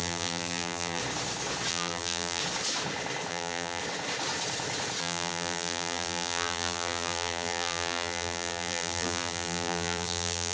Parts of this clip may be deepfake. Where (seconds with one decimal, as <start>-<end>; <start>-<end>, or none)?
0.0-1.0; 1.7-2.4; 3.3-3.8; 5.0-10.5